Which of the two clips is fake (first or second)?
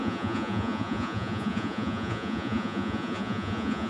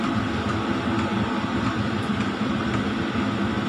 first